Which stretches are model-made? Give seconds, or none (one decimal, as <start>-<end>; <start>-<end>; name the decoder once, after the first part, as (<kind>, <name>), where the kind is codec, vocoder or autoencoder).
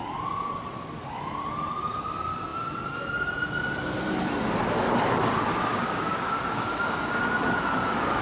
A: 5.7-7.2 (codec, DAC)